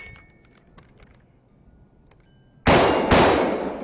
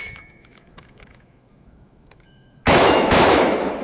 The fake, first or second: second